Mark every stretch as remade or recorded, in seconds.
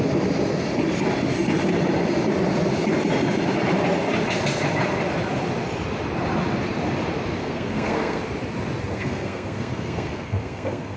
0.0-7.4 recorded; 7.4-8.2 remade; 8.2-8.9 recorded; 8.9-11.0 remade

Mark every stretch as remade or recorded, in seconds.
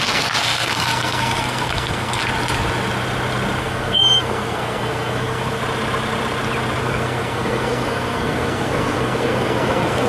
0.0-2.2 remade; 2.2-3.6 recorded; 3.6-5.6 remade; 5.6-6.8 recorded; 6.8-10.1 remade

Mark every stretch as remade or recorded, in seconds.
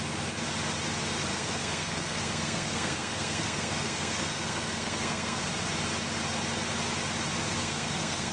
0.0-1.3 recorded; 1.3-5.5 remade; 5.5-7.6 recorded; 7.6-8.3 remade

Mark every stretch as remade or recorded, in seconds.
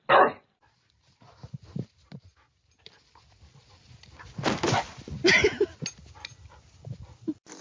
0.0-7.6 recorded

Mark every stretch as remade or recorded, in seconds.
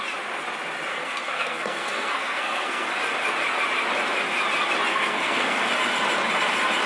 0.0-0.9 recorded; 0.9-2.9 remade; 2.9-4.9 recorded; 4.9-5.7 remade; 5.7-6.9 recorded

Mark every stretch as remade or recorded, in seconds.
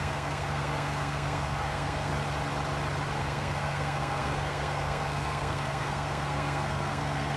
0.0-2.1 remade; 2.1-3.2 recorded; 3.2-7.4 remade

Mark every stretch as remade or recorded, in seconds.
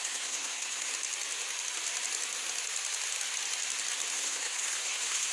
0.0-0.9 remade; 0.9-4.1 recorded; 4.1-5.3 remade